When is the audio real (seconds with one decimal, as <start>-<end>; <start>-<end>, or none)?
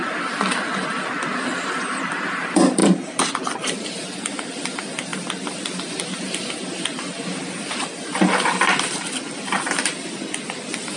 0.0-11.0